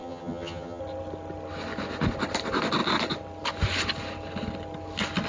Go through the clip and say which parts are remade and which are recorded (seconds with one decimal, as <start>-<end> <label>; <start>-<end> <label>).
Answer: 0.0-0.8 remade; 0.8-5.3 recorded